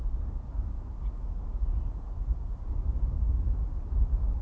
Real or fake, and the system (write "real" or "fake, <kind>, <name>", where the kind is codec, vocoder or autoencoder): real